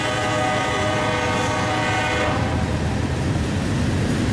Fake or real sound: real